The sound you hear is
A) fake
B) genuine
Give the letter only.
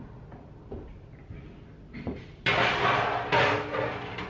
B